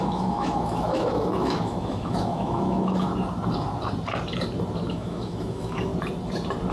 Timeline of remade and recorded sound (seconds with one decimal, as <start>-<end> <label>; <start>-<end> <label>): 0.0-3.1 remade; 3.1-4.9 recorded; 4.9-5.9 remade; 5.9-6.7 recorded